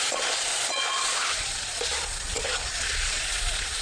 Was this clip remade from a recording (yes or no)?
yes